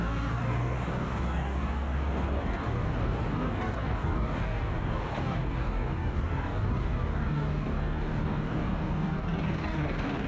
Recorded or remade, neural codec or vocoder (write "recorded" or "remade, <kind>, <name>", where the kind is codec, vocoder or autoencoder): remade, codec, DAC